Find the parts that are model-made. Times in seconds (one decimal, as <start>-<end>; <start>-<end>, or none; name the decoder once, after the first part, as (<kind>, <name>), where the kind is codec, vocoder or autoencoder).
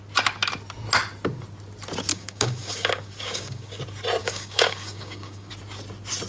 2.1-3.8 (codec, DAC); 4.2-5.5